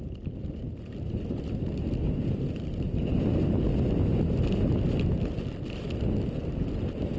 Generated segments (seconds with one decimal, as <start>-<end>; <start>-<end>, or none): none